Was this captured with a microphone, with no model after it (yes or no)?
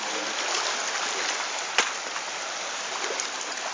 yes